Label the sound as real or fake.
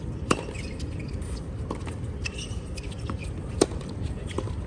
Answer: fake